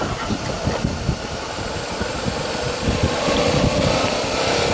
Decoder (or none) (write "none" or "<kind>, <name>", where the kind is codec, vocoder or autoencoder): none